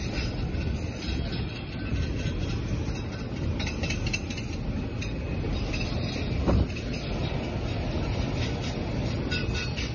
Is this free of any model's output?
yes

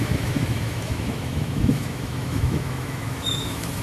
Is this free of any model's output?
no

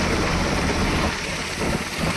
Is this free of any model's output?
no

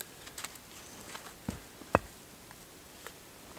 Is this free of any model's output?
yes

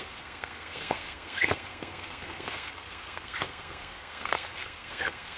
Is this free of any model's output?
no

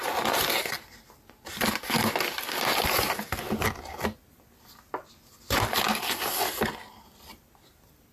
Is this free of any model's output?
yes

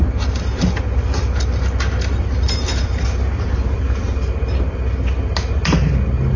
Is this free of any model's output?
yes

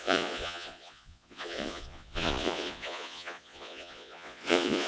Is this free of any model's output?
no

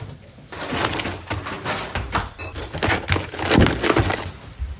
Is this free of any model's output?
yes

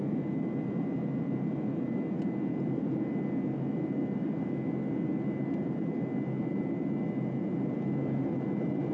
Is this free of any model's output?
yes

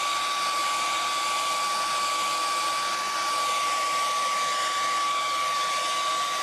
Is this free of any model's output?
yes